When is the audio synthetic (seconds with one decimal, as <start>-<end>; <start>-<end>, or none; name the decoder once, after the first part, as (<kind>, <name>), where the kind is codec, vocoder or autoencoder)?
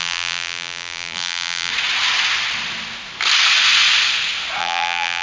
0.0-1.7 (vocoder, BigVGAN v2); 4.6-5.2